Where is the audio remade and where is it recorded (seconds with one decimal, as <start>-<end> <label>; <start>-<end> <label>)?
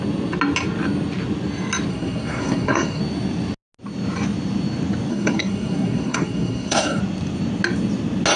0.0-1.9 recorded; 1.9-3.0 remade; 3.0-5.1 recorded; 5.1-7.0 remade; 7.0-8.4 recorded